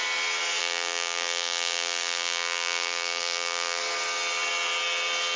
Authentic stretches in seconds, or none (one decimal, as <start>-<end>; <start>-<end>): 0.0-0.6; 3.8-5.4